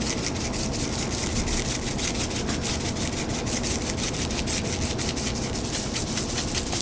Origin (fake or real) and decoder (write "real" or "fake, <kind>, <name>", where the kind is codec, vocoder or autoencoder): real